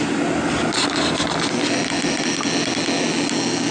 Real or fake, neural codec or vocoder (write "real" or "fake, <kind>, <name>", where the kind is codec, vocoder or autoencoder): real